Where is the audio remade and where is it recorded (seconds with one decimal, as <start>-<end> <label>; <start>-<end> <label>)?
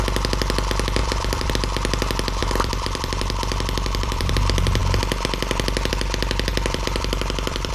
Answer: 0.0-1.0 recorded; 1.0-1.5 remade; 1.5-2.4 recorded; 2.4-4.3 remade; 4.3-6.5 recorded; 6.5-7.7 remade